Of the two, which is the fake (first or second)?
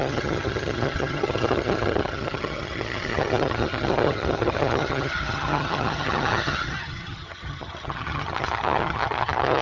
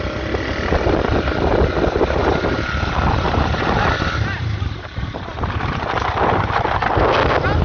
first